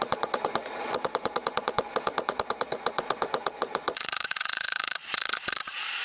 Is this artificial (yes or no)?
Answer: yes